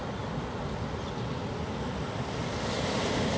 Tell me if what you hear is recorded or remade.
recorded